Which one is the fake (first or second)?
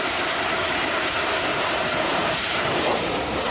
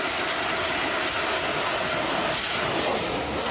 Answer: first